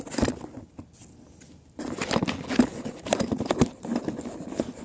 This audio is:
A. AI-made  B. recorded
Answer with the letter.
B